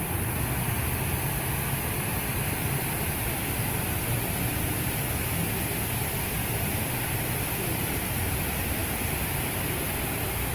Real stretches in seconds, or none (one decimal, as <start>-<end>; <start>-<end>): 0.0-2.1; 5.5-6.4; 8.2-8.8; 9.3-10.5